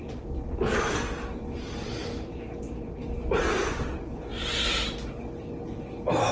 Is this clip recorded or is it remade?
recorded